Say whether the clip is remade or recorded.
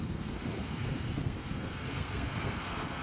remade